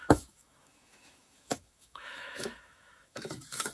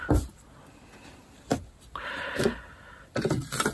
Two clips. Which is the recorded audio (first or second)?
second